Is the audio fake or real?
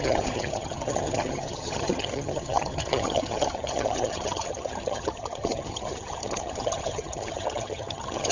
fake